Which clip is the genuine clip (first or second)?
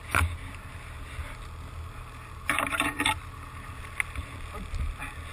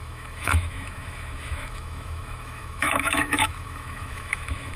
first